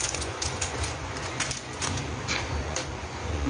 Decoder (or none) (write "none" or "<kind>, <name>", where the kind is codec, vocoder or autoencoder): vocoder, Vocos